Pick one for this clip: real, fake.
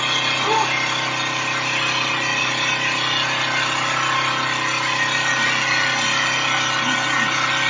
real